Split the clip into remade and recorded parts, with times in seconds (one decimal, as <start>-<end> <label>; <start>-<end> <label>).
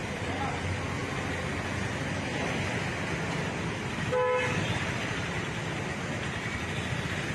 0.0-7.3 recorded